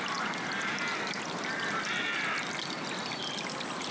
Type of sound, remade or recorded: recorded